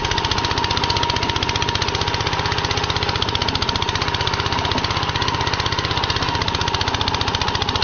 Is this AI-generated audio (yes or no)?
no